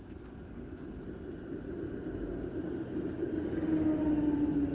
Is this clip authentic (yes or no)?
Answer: yes